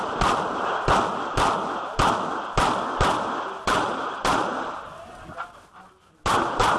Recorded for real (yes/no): yes